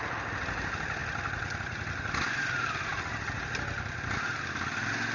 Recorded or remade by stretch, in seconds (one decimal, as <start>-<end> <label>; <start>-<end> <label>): 0.0-5.1 recorded